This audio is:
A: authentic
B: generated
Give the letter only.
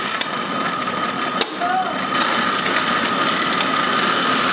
A